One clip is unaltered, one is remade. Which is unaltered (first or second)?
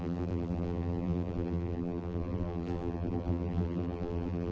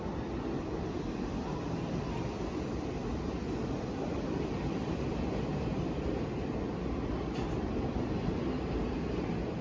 second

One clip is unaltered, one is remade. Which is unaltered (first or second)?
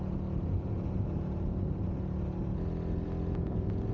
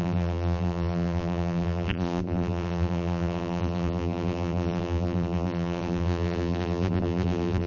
first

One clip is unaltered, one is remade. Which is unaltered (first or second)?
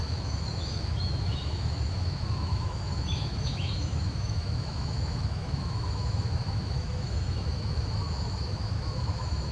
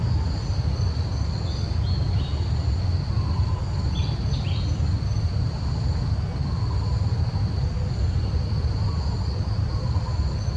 second